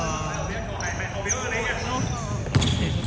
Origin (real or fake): real